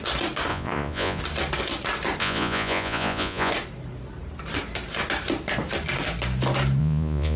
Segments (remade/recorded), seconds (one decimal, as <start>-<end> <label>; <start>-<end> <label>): 0.0-0.5 recorded; 0.5-1.2 remade; 1.2-2.2 recorded; 2.2-3.5 remade; 3.5-6.8 recorded; 6.8-7.4 remade